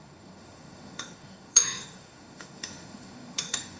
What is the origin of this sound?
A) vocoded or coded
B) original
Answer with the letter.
A